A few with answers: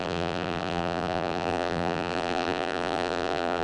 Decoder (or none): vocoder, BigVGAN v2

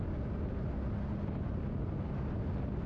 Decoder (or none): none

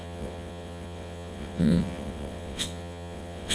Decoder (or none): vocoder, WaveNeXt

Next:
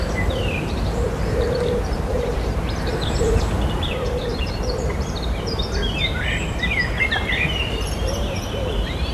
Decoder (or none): vocoder, BigVGAN v2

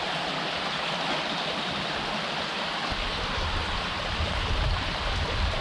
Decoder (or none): none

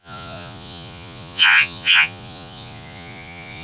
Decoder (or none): vocoder, Vocos